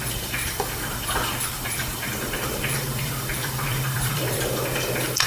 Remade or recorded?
remade